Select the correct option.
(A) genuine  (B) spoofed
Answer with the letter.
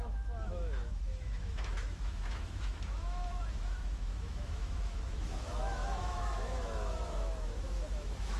B